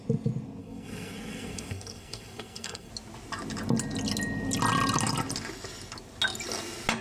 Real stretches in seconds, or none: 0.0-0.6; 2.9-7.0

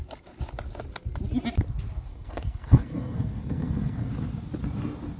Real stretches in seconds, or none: 0.0-2.1; 4.1-5.2

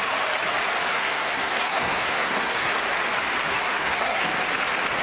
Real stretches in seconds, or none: 0.0-0.9; 2.8-3.5; 4.2-5.0

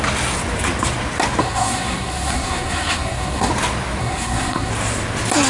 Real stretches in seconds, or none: 0.0-1.4; 3.5-4.0; 4.7-5.5